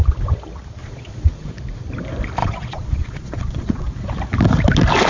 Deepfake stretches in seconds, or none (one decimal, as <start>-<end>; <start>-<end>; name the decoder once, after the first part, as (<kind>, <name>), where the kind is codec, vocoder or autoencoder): 0.8-1.5 (vocoder, Vocos); 2.4-3.9

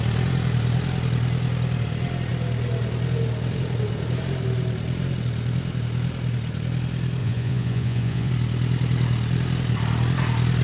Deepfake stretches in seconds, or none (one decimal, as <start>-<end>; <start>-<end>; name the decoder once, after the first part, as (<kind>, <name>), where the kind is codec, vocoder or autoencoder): 7.2-8.3 (vocoder, Vocos)

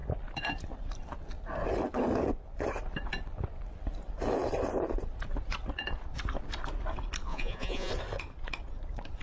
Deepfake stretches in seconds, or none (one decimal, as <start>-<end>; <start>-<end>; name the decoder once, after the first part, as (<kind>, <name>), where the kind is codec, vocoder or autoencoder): 7.3-7.9 (vocoder, Vocos)

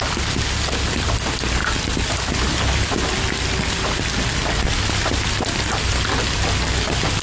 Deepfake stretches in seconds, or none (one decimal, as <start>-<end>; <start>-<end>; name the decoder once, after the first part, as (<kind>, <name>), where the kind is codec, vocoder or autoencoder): none

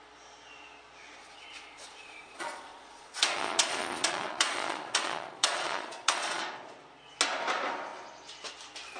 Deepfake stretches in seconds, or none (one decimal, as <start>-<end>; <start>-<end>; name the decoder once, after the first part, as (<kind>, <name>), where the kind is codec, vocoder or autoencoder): 1.2-6.4 (vocoder, Vocos)

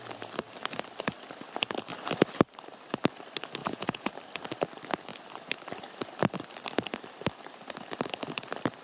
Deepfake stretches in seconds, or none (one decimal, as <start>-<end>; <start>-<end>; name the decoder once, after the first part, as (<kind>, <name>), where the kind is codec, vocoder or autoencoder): 3.6-4.1 (vocoder, Vocos)

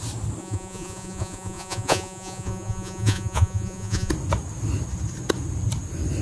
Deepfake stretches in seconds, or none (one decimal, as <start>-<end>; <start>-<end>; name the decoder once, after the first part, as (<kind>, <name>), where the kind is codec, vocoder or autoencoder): 0.4-4.1 (vocoder, Vocos)

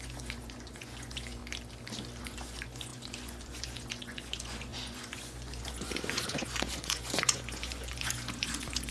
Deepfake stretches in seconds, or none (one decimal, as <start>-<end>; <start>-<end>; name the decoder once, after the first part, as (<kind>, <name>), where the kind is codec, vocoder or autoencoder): 0.0-1.4 (vocoder, Vocos); 2.2-8.9